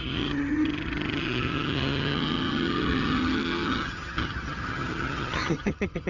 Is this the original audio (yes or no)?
no